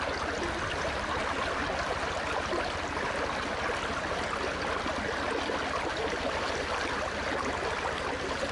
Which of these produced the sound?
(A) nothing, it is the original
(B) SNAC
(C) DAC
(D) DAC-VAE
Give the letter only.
A